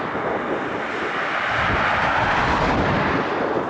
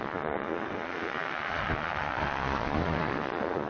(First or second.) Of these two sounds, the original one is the first